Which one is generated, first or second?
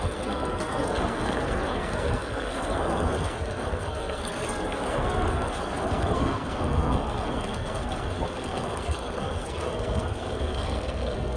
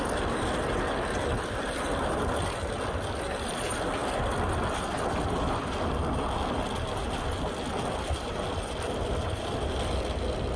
first